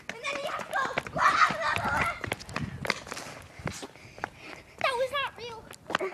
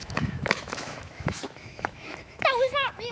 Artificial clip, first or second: second